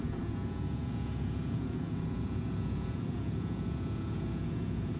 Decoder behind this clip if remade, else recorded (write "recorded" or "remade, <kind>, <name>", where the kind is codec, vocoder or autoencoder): remade, vocoder, Vocos